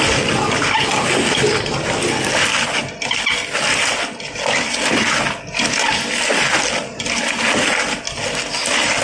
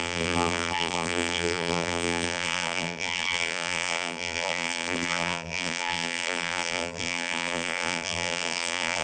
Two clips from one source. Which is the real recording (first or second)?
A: first